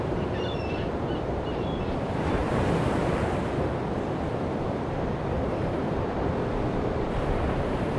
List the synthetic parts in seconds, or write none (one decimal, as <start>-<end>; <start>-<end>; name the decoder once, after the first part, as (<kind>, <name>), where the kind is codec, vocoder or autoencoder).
0.0-2.4 (vocoder, BigVGAN v2); 4.2-8.0

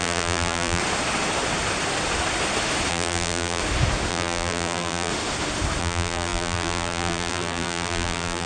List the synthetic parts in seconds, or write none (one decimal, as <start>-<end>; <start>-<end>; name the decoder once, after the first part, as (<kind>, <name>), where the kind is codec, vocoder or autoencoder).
0.0-0.8 (vocoder, BigVGAN v2); 2.9-3.6; 4.1-5.1; 5.8-8.5

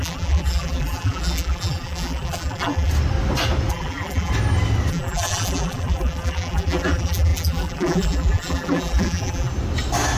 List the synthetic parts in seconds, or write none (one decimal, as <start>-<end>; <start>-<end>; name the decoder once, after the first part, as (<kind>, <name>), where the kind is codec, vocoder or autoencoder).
0.0-2.9 (vocoder, BigVGAN v2); 3.7-4.3; 4.9-9.5

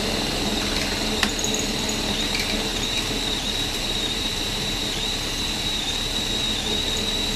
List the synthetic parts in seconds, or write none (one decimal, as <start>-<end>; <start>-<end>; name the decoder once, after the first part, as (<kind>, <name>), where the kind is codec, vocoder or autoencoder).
2.7-6.3 (vocoder, BigVGAN v2)

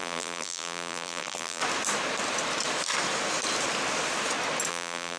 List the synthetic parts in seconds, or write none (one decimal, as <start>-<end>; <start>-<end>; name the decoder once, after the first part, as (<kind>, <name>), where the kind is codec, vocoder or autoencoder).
0.0-1.6 (vocoder, BigVGAN v2); 4.7-5.2

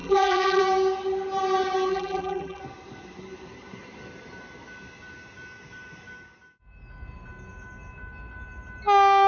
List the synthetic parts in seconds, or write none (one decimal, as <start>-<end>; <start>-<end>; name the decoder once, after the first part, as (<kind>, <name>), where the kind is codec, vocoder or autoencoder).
0.0-0.6 (vocoder, BigVGAN v2); 1.9-2.6